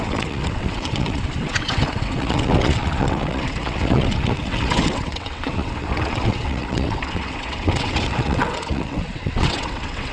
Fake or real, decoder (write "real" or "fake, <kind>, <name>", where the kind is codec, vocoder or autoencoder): fake, vocoder, WaveNeXt